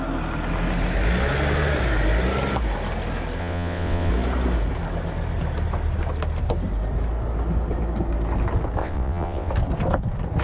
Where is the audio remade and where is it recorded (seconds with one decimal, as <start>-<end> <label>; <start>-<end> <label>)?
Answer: 0.0-3.4 recorded; 3.4-4.1 remade; 4.1-8.8 recorded; 8.8-9.5 remade; 9.5-10.4 recorded